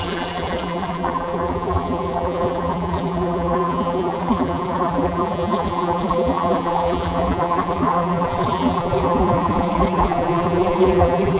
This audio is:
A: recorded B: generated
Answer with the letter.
B